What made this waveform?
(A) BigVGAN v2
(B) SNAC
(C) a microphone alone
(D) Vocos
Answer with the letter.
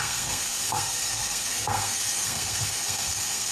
B